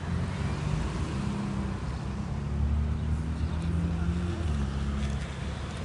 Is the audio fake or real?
real